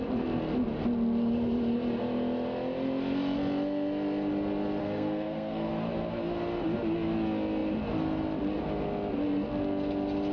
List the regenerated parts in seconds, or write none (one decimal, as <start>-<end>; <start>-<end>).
4.8-5.7